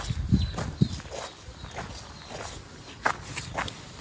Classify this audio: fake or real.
real